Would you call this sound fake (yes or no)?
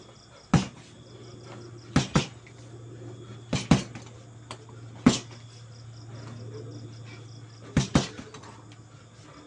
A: no